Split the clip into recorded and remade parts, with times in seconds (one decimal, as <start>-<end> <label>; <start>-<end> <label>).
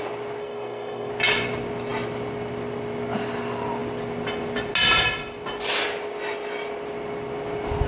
0.0-0.4 recorded; 0.4-1.1 remade; 1.1-7.9 recorded